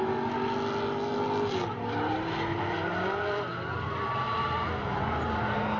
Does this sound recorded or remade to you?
recorded